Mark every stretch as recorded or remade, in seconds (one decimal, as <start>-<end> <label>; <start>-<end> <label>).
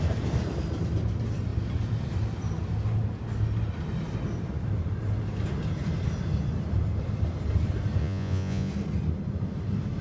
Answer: 0.0-8.0 recorded; 8.0-8.7 remade; 8.7-10.0 recorded